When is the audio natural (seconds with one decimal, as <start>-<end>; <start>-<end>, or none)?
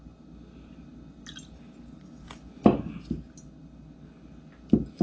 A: 0.0-5.0